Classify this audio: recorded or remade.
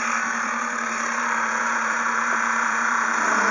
remade